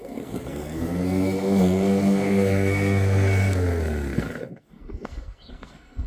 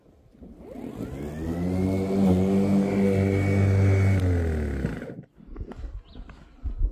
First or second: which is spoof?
first